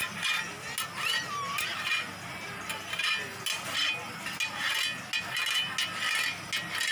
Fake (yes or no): no